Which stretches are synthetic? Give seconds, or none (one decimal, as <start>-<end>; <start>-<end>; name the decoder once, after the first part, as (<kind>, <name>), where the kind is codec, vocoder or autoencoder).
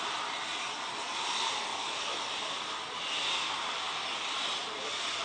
1.7-2.3 (autoencoder, DAC-VAE)